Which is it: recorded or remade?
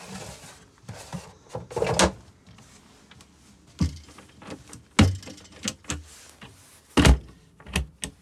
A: recorded